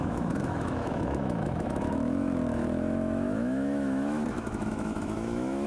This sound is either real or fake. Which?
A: fake